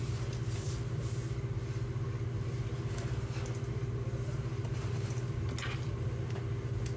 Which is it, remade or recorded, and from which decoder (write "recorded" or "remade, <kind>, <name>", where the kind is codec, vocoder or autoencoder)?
recorded